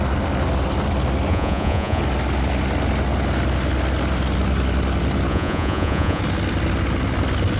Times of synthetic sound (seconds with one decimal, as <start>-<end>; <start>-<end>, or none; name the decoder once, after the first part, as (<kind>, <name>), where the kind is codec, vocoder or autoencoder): 1.3-2.0 (vocoder, Vocos); 5.3-6.2